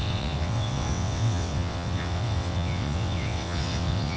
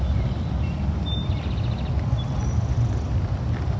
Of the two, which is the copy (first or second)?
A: first